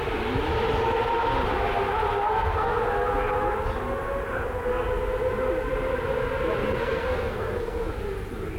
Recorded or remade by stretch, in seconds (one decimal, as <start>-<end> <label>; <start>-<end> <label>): 0.0-2.2 recorded; 2.2-2.8 remade; 2.8-6.6 recorded; 6.6-8.0 remade; 8.0-8.6 recorded